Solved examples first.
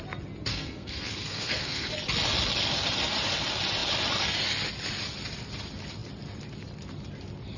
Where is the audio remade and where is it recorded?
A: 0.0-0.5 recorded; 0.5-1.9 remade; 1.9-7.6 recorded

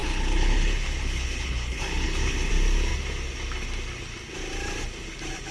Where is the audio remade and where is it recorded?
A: 0.0-2.5 remade; 2.5-5.5 recorded

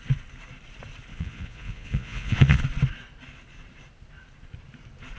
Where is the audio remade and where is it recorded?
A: 0.0-1.1 recorded; 1.1-2.6 remade; 2.6-5.2 recorded

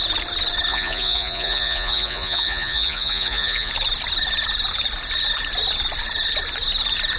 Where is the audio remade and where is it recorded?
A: 0.0-0.7 recorded; 0.7-3.7 remade; 3.7-7.2 recorded

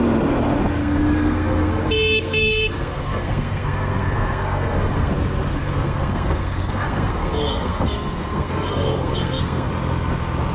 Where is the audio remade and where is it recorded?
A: 0.0-0.8 recorded; 0.8-5.1 remade; 5.1-5.5 recorded; 5.5-9.7 remade; 9.7-10.5 recorded

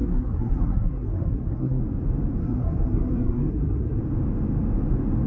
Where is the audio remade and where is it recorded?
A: 0.0-1.8 remade; 1.8-2.4 recorded; 2.4-4.0 remade; 4.0-5.3 recorded